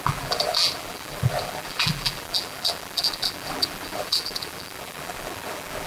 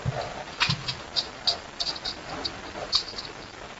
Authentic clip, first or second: second